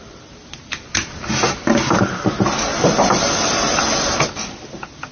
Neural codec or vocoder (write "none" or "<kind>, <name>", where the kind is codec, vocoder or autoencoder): none